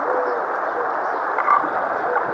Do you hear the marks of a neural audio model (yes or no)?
no